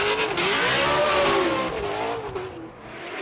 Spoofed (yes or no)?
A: no